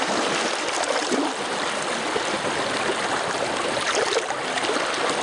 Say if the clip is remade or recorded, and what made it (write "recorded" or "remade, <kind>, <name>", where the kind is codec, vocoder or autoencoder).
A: recorded